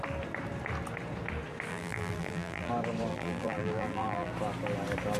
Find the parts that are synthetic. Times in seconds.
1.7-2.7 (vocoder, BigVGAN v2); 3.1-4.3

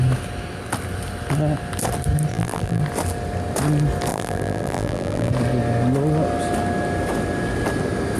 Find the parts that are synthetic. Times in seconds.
2.3-2.8 (vocoder, BigVGAN v2); 4.1-5.3